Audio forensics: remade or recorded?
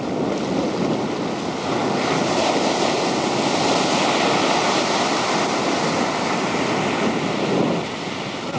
recorded